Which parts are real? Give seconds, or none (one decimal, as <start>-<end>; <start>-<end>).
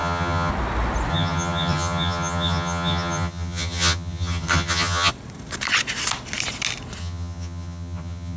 0.5-1.1; 5.1-7.0